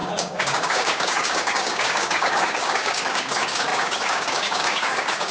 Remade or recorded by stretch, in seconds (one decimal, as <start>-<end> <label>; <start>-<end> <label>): 0.0-5.3 remade